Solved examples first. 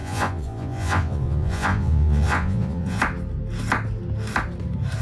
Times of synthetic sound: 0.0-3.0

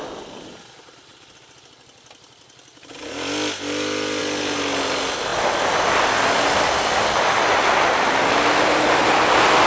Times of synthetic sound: none

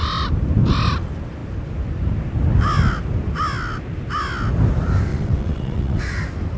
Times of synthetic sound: 5.1-6.0

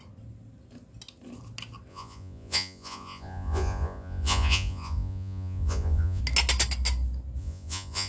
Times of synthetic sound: 1.9-6.2; 7.4-8.1

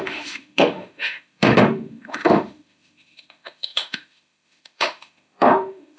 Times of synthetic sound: 0.0-6.0

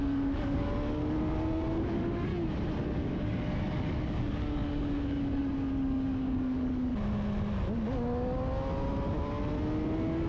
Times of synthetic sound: 0.0-1.0; 1.8-2.3; 3.0-6.9

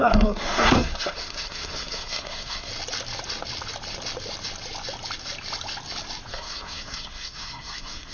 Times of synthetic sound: 0.0-2.7; 6.3-8.1